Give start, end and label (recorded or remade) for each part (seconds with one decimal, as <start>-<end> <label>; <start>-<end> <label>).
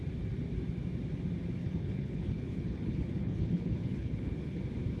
0.0-1.6 recorded; 1.6-4.6 remade; 4.6-5.0 recorded